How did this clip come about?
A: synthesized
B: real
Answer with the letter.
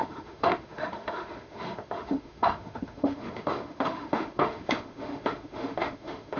A